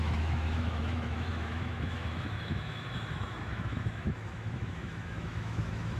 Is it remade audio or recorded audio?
remade